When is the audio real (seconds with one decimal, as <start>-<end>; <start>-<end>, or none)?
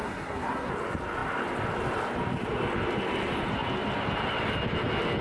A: 0.7-5.2